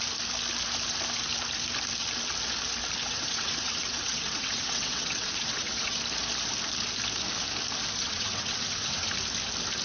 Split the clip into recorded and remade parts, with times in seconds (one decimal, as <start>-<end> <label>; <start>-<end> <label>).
0.0-3.0 recorded; 3.0-6.0 remade; 6.0-8.0 recorded; 8.0-9.1 remade; 9.1-9.8 recorded

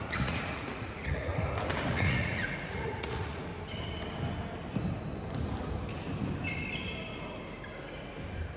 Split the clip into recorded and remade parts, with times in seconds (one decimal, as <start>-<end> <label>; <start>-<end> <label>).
0.0-1.3 remade; 1.3-1.9 recorded; 1.9-3.5 remade; 3.5-8.6 recorded

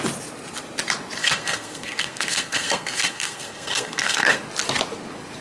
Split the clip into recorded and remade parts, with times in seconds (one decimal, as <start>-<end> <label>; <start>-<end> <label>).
0.0-1.2 recorded; 1.2-4.4 remade; 4.4-5.4 recorded

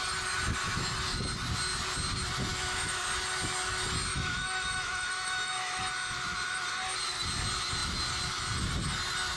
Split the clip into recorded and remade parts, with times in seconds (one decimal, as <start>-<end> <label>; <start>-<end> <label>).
0.0-2.5 recorded; 2.5-3.0 remade; 3.0-4.1 recorded; 4.1-5.8 remade; 5.8-9.4 recorded

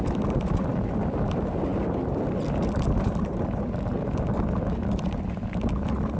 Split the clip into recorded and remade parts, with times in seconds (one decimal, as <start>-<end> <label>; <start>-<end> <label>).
0.0-6.2 recorded